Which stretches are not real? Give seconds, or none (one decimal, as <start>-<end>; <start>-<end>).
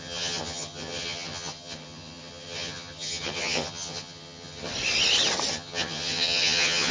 0.0-4.7; 5.5-6.9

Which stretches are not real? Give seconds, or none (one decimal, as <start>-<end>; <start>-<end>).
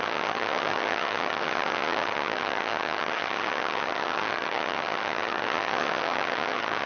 0.0-6.9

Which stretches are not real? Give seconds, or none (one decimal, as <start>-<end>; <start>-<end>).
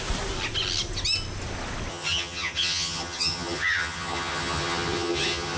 1.9-5.6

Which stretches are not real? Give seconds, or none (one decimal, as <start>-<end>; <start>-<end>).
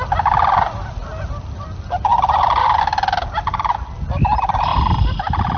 none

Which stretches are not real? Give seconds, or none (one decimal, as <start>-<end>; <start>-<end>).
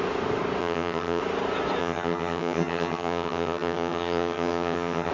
0.6-1.2; 1.8-5.1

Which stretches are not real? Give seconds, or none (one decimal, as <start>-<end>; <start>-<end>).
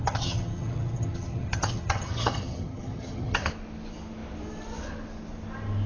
0.0-3.5